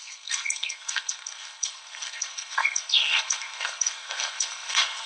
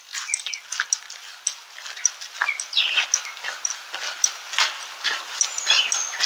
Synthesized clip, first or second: first